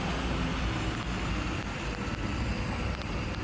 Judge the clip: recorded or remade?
recorded